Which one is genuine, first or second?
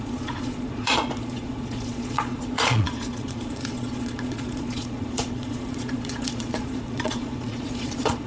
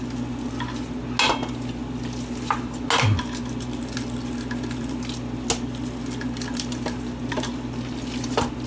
second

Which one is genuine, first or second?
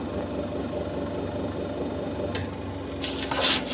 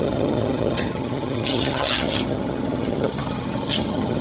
first